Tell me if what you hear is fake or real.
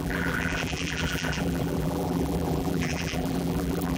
fake